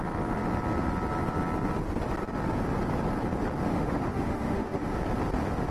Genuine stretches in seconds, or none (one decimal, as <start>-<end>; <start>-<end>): 0.0-3.7; 5.0-5.7

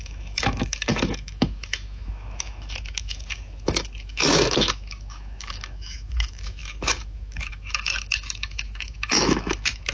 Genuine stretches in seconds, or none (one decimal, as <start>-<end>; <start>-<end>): none

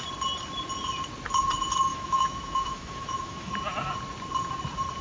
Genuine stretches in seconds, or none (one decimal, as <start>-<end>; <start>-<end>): 0.0-1.9; 3.5-5.0

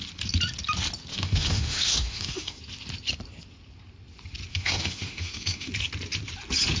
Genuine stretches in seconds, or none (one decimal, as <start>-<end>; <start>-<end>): 0.0-1.1; 2.6-4.5; 5.7-6.8